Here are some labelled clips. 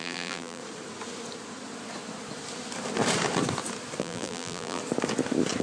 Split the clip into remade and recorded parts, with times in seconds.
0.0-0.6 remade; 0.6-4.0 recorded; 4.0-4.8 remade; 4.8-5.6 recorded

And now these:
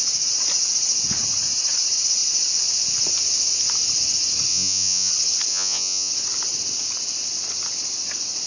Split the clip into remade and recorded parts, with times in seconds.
0.0-4.5 recorded; 4.5-5.1 remade; 5.1-5.5 recorded; 5.5-6.1 remade; 6.1-8.5 recorded

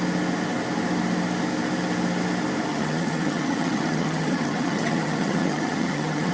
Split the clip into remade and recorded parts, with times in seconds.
0.0-2.7 recorded; 2.7-6.3 remade

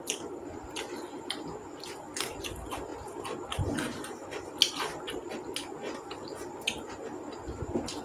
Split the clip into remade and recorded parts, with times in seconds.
0.0-8.0 recorded

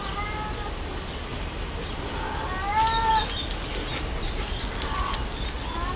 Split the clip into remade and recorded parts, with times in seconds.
0.0-6.0 recorded

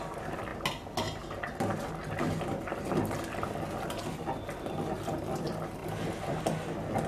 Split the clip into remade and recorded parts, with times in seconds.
0.0-7.1 recorded

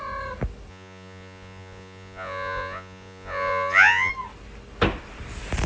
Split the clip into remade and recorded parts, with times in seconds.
0.0-0.7 recorded; 0.7-4.1 remade; 4.1-5.7 recorded

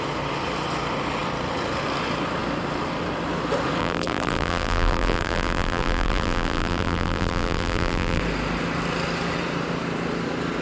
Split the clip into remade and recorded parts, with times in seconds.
0.0-3.8 recorded; 3.8-8.2 remade; 8.2-10.6 recorded